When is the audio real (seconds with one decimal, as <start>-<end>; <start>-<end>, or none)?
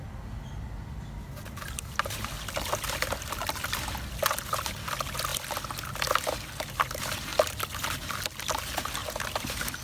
0.0-9.8